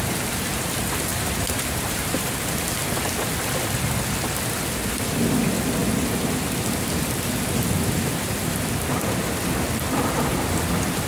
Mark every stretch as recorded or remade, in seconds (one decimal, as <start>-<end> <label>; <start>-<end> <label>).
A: 0.0-1.1 recorded; 1.1-2.6 remade; 2.6-11.1 recorded

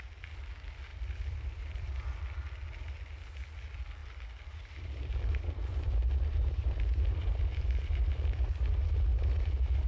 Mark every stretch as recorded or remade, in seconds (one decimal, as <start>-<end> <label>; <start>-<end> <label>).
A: 0.0-0.9 recorded; 0.9-2.2 remade; 2.2-4.0 recorded; 4.0-7.9 remade; 7.9-9.1 recorded; 9.1-9.9 remade

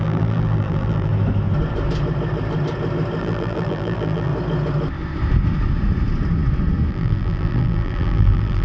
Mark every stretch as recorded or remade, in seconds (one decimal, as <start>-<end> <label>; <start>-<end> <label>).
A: 0.0-1.1 remade; 1.1-3.2 recorded; 3.2-4.3 remade; 4.3-6.9 recorded; 6.9-8.6 remade

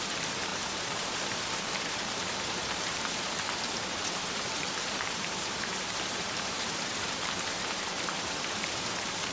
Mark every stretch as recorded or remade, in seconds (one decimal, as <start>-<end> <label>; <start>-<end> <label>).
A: 0.0-9.3 remade

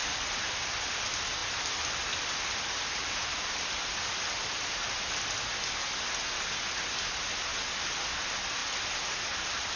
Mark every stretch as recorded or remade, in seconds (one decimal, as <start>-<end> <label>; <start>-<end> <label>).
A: 0.0-0.7 remade; 0.7-9.8 recorded

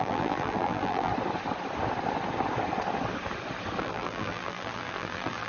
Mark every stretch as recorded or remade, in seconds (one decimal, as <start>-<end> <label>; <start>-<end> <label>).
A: 0.0-1.1 remade; 1.1-3.8 recorded; 3.8-5.5 remade

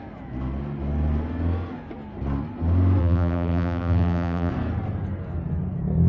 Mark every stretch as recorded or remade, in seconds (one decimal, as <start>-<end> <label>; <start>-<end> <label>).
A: 0.0-3.0 recorded; 3.0-4.5 remade; 4.5-6.1 recorded

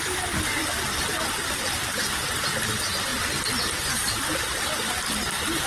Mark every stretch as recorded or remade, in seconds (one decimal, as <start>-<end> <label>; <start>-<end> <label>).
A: 0.0-3.1 recorded; 3.1-4.9 remade; 4.9-5.7 recorded